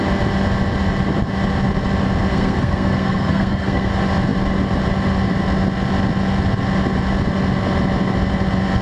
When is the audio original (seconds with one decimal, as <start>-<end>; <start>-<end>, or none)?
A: 0.0-2.3; 3.9-8.8